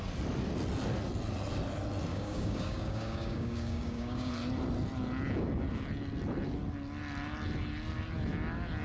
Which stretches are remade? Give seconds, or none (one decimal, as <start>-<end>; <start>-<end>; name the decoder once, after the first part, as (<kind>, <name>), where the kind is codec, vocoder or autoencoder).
2.1-4.3 (codec, DAC)